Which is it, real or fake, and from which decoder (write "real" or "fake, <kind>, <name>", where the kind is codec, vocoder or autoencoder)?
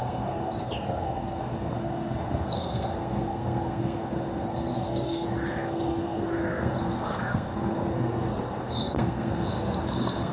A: fake, codec, SNAC